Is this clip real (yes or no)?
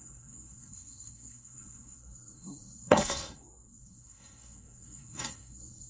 no